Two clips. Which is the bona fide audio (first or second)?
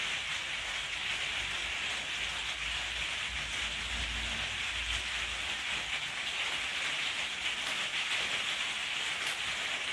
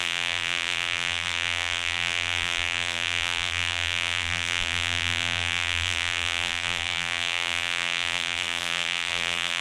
first